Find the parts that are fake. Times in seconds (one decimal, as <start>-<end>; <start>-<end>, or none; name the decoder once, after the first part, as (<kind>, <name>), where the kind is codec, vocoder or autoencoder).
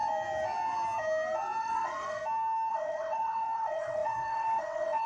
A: 1.6-2.2 (vocoder, WaveNeXt); 2.7-5.1